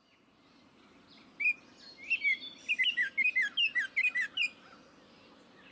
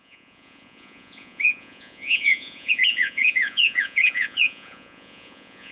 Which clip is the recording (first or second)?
first